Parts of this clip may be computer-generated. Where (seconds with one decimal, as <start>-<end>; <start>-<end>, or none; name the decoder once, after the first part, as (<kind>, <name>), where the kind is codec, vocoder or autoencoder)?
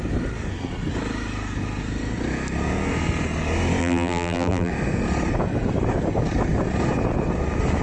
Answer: 3.8-4.7 (vocoder, BigVGAN v2)